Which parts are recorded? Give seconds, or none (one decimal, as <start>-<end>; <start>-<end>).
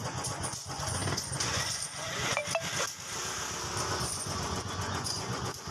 2.4-3.9